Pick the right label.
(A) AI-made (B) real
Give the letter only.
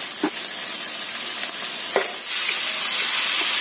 B